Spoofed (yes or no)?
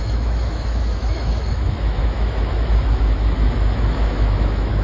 yes